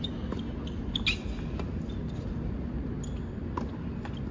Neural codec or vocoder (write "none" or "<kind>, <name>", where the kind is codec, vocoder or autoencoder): none